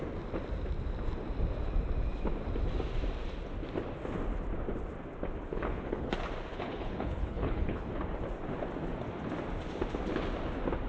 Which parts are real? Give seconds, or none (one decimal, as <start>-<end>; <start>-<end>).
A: 0.0-5.5; 6.1-6.5; 7.9-10.9